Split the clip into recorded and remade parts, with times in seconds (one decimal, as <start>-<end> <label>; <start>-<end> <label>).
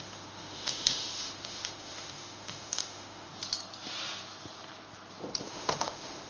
0.0-3.3 remade; 3.3-5.4 recorded; 5.4-6.3 remade